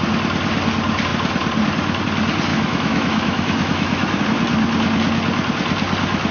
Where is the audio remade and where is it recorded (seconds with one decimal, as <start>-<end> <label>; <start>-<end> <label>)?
0.0-2.5 recorded; 2.5-4.2 remade; 4.2-6.3 recorded